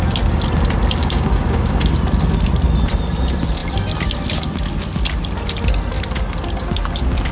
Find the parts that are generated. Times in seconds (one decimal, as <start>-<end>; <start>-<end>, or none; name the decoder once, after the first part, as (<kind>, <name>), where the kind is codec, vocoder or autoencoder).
1.0-1.9 (codec, DAC)